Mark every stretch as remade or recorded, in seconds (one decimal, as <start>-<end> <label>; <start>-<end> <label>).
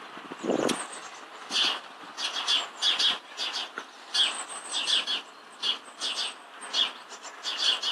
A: 0.0-7.9 recorded